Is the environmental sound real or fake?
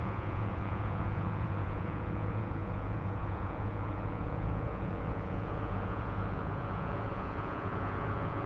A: fake